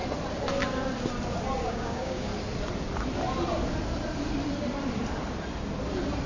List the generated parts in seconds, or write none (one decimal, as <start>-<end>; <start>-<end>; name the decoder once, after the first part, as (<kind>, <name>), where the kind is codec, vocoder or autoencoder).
1.7-2.3 (codec, DAC)